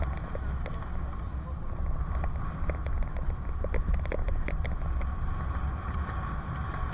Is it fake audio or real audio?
real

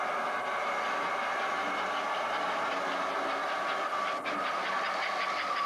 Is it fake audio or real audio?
real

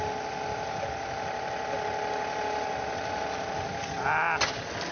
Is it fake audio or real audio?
real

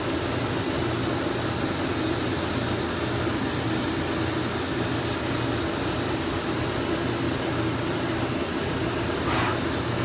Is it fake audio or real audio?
real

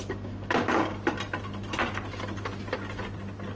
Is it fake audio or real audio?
real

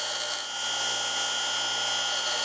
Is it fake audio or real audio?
real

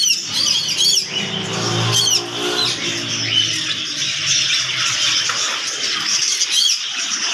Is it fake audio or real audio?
real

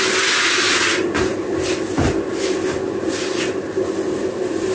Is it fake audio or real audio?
real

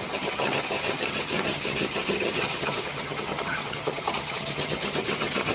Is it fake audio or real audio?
fake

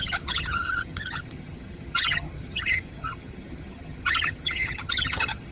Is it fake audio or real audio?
fake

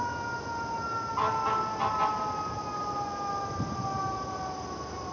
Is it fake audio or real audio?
real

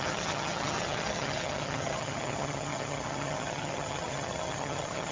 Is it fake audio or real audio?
fake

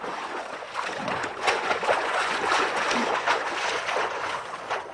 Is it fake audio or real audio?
fake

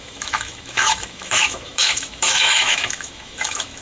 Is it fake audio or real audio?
fake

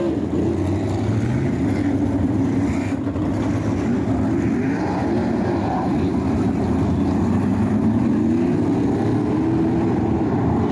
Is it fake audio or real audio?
real